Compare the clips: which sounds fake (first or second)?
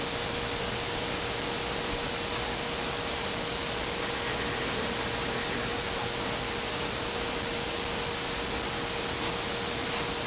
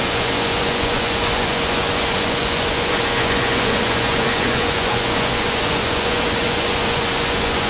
second